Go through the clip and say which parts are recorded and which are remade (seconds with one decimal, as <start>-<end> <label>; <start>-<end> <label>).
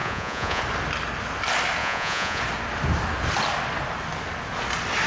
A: 0.0-0.6 remade; 0.6-1.8 recorded; 1.8-2.4 remade; 2.4-5.1 recorded